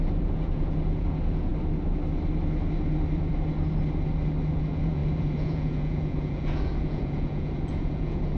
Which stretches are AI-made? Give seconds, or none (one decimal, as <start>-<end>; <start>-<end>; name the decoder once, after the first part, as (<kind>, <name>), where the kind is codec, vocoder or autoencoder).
0.0-1.5 (vocoder, Vocos); 4.5-8.4